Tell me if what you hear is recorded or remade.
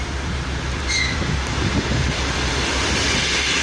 recorded